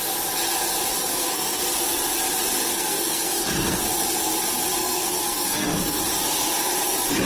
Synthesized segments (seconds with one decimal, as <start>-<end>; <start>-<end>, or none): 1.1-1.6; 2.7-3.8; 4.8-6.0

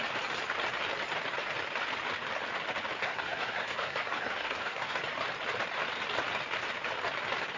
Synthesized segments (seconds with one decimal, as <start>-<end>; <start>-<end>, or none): 3.0-5.0

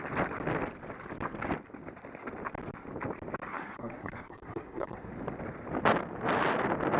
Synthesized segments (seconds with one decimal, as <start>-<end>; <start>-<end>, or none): 3.5-5.1